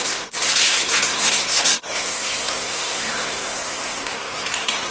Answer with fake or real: fake